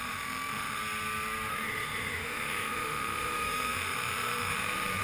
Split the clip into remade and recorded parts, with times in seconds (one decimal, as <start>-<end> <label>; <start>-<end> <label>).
0.0-0.8 remade; 0.8-1.5 recorded; 1.5-5.0 remade